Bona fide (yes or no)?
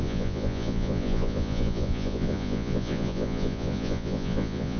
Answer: no